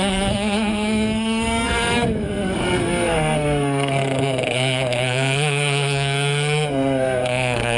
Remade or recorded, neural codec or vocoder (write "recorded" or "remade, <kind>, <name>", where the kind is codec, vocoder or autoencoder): remade, codec, SNAC